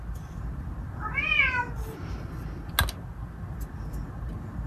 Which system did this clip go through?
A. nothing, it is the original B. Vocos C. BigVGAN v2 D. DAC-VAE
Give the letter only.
A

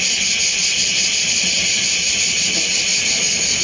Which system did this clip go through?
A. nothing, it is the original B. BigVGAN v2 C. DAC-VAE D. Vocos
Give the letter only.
A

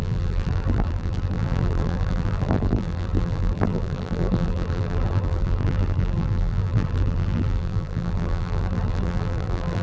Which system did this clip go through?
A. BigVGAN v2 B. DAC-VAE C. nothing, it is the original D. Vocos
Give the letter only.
A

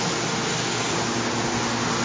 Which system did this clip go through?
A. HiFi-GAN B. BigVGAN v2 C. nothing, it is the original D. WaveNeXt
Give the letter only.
C